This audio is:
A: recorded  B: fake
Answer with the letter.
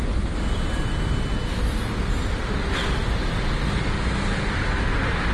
A